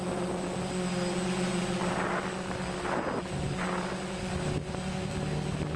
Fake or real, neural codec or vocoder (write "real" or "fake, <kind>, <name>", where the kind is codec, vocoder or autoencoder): real